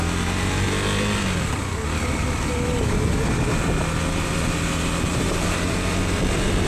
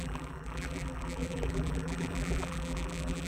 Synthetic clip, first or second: second